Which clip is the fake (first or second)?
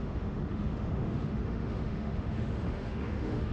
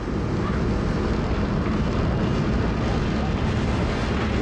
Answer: first